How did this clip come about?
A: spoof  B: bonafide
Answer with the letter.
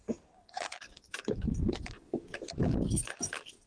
A